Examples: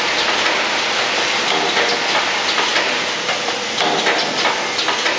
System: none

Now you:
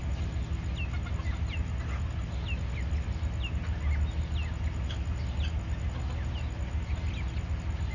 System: none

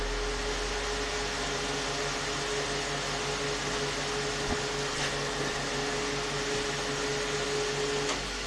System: none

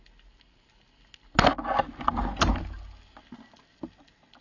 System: none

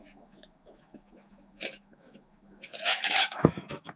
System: autoencoder, DAC-VAE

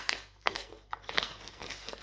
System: codec, SNAC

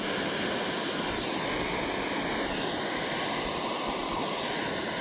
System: none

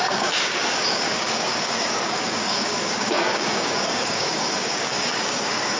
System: codec, DAC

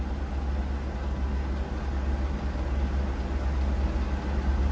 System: none